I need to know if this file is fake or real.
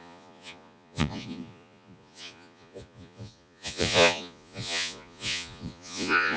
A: fake